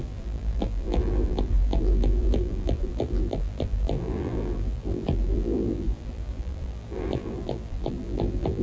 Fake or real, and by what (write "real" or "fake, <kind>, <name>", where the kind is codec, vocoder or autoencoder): fake, vocoder, BigVGAN v2